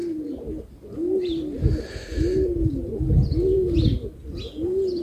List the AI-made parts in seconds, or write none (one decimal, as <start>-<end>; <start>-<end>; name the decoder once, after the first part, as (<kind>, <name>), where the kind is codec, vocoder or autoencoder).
none